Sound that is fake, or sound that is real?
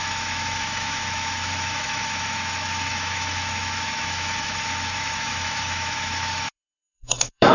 fake